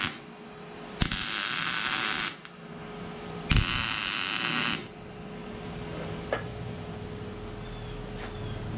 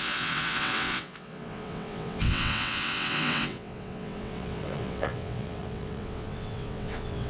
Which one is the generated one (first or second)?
second